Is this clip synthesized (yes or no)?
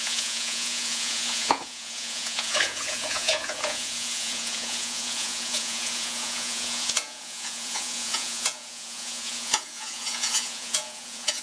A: yes